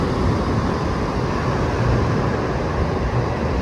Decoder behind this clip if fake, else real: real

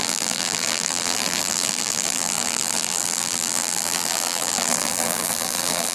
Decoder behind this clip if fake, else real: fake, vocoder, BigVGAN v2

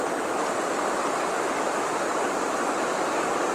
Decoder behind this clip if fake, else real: real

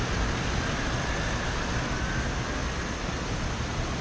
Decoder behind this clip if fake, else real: real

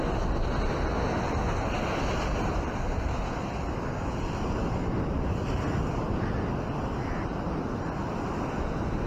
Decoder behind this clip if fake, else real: real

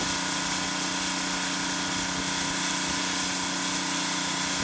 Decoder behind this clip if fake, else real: real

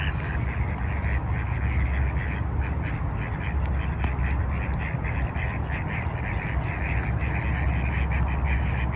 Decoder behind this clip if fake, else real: real